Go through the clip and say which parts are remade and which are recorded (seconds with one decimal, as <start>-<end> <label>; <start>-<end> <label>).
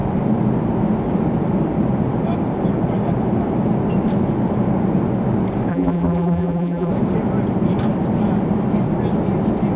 0.0-5.7 recorded; 5.7-6.9 remade; 6.9-9.8 recorded